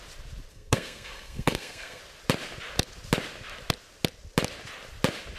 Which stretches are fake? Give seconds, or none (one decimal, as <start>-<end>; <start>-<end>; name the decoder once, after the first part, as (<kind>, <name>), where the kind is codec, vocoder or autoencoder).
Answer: 0.5-2.0 (codec, SNAC)